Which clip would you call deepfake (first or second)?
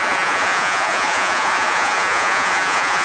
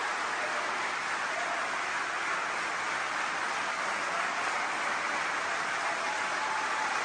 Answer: first